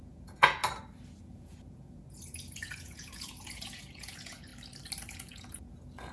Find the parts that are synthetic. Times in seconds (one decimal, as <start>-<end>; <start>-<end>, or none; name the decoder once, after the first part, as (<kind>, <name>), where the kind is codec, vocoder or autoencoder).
0.0-0.6 (vocoder, Vocos); 1.2-4.5; 5.1-6.1